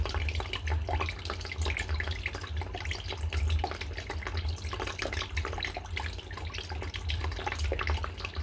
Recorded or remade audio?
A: recorded